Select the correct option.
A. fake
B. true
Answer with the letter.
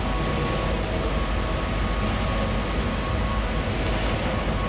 B